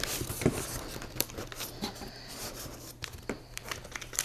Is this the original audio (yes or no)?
no